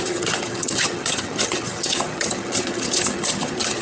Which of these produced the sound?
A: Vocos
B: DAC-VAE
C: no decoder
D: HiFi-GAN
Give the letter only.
D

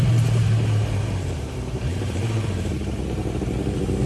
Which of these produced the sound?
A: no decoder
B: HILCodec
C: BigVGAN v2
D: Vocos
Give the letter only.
C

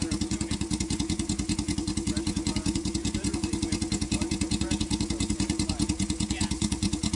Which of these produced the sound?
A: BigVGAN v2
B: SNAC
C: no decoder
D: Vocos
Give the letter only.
D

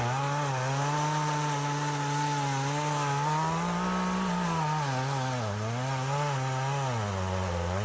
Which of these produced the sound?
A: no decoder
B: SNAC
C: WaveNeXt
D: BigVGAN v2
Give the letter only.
A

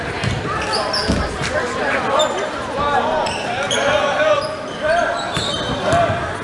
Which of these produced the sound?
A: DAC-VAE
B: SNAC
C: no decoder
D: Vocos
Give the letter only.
C